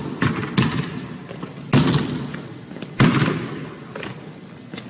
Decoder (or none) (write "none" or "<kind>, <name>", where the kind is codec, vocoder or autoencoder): none